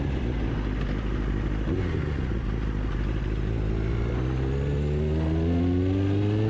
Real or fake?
real